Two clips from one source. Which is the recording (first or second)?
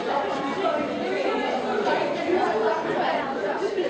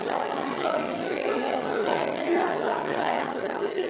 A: first